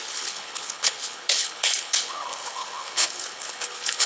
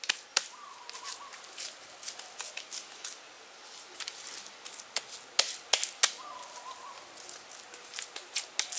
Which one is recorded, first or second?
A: second